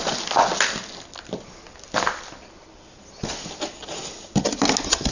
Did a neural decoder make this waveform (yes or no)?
no